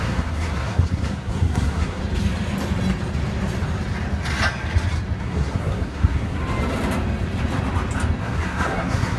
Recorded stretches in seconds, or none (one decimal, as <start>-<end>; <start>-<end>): 2.0-5.2; 6.4-8.2